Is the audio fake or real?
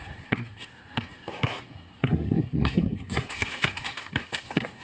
fake